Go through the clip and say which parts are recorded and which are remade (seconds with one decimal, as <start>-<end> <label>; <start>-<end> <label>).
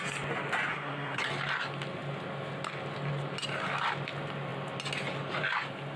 0.0-0.7 recorded; 0.7-1.2 remade; 1.2-6.0 recorded